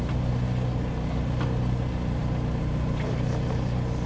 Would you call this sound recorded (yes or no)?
yes